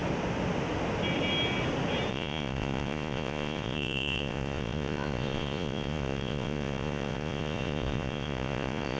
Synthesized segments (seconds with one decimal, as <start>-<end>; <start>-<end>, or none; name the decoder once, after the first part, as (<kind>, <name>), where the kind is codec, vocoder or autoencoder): 2.1-9.0 (vocoder, Vocos)

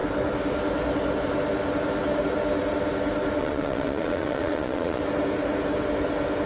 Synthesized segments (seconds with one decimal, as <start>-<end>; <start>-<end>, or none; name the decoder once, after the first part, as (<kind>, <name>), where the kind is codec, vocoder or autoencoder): 3.4-5.0 (vocoder, Vocos)

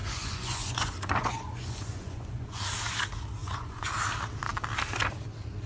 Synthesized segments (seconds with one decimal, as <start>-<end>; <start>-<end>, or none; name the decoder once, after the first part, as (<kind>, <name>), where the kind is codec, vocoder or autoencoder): 0.0-2.6 (vocoder, Vocos); 3.4-3.9

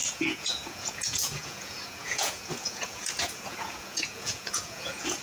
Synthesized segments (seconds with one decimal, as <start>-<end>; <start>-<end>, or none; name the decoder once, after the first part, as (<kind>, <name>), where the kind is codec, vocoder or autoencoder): 0.0-5.2 (vocoder, Vocos)